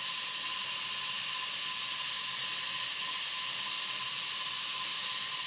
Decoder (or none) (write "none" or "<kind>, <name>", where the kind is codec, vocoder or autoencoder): none